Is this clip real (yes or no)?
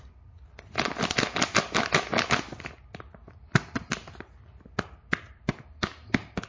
yes